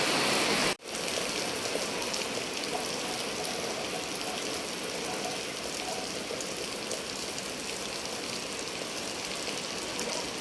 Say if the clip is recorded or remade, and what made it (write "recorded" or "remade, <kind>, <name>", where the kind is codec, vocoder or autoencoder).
recorded